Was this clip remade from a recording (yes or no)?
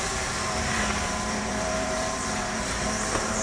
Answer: yes